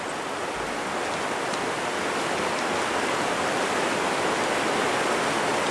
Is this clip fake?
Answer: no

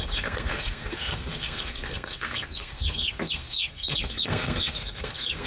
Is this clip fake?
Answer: yes